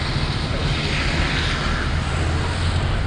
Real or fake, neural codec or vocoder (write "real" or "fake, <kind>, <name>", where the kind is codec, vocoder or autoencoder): real